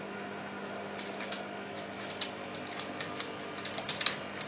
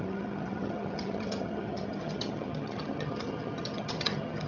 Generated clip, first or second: second